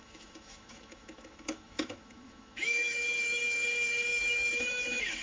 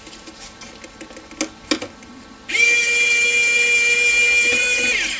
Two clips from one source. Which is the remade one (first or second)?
first